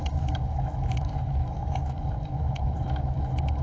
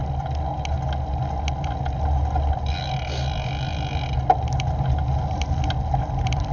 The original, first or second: second